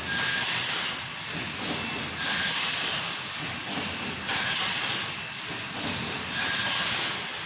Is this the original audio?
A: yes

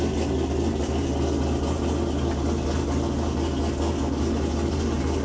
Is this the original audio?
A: yes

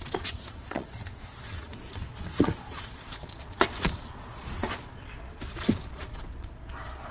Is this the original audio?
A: no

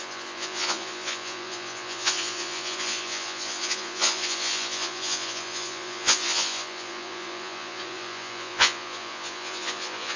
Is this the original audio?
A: no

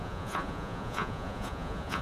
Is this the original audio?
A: no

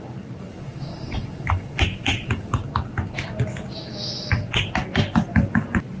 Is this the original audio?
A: yes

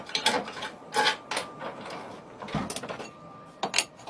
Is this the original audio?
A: yes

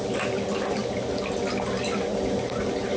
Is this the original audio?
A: yes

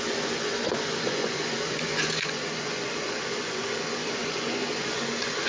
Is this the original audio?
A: no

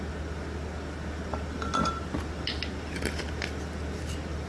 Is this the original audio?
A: yes